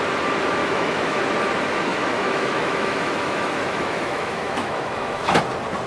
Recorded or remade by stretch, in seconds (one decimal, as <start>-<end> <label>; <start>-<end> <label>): 0.0-0.6 recorded; 0.6-1.2 remade; 1.2-1.9 recorded; 1.9-5.4 remade; 5.4-5.9 recorded